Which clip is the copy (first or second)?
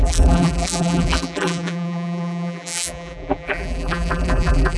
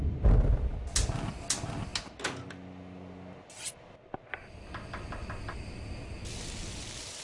first